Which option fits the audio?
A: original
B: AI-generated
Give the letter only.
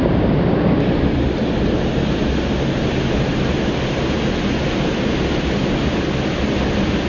A